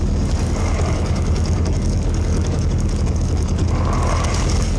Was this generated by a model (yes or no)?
yes